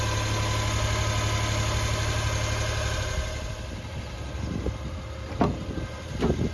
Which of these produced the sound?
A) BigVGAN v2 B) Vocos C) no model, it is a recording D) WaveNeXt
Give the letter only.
C